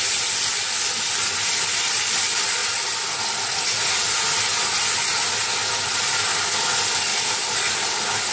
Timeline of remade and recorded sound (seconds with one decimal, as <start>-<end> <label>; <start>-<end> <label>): 0.0-8.3 recorded